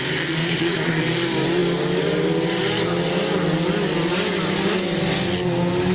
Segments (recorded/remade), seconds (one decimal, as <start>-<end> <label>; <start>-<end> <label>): 0.0-0.4 recorded; 0.4-1.0 remade; 1.0-5.9 recorded